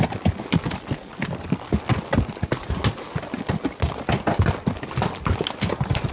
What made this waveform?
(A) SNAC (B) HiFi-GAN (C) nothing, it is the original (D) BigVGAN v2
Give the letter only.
C